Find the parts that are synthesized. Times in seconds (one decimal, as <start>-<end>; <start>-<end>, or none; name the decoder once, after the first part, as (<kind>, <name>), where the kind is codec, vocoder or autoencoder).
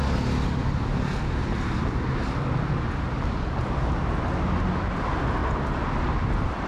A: none